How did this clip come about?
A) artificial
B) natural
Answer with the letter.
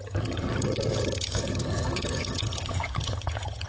A